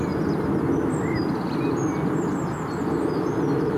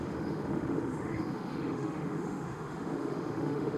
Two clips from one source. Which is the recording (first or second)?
first